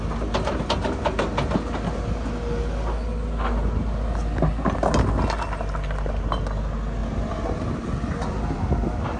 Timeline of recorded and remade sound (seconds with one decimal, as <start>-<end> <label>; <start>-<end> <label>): 0.0-7.0 recorded; 7.0-8.6 remade; 8.6-9.2 recorded